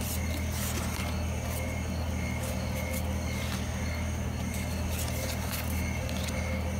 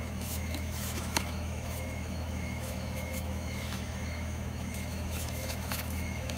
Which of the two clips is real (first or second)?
first